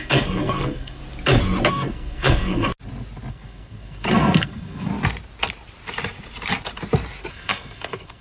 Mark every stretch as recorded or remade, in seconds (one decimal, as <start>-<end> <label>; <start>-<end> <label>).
0.0-1.0 remade; 1.0-1.7 recorded; 1.7-2.7 remade; 2.7-3.3 recorded; 3.3-4.9 remade; 4.9-7.3 recorded; 7.3-8.2 remade